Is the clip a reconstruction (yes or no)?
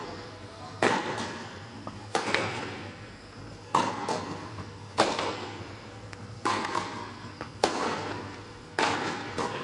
yes